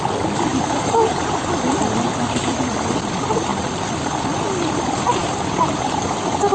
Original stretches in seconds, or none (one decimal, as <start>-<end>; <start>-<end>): 0.0-0.5; 1.8-3.5; 4.7-6.5